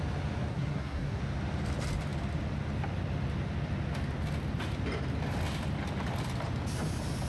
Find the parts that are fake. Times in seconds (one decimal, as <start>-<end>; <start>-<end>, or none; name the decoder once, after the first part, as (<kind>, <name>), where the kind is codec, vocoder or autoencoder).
0.5-1.2 (codec, SNAC)